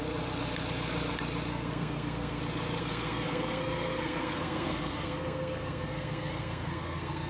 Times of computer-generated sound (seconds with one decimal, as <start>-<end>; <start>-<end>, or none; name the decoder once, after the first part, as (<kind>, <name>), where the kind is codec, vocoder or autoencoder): 1.5-2.4 (codec, SNAC); 2.8-7.3